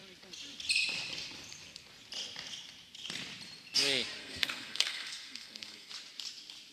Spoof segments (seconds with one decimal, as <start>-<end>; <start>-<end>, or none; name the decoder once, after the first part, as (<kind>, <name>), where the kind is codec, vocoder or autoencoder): 4.2-5.9 (codec, SNAC)